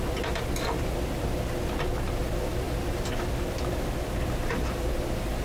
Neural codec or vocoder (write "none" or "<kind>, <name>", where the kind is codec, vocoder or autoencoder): none